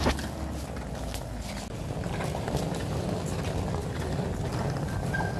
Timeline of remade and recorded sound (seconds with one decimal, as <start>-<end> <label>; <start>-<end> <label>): 0.0-5.4 recorded